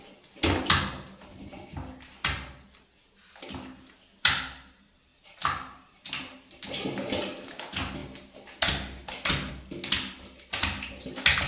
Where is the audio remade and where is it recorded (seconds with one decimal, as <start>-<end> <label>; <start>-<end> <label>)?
0.0-11.5 recorded